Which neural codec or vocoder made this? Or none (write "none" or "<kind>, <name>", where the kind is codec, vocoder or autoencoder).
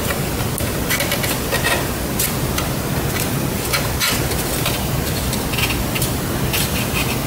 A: none